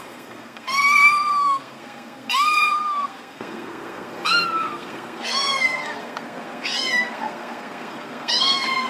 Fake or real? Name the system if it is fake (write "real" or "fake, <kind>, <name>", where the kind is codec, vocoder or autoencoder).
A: fake, codec, SNAC